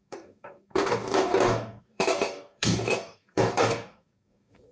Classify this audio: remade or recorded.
remade